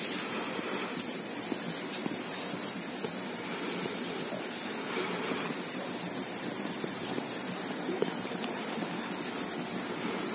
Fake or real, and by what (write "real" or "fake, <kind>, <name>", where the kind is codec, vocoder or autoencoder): fake, vocoder, BigVGAN v2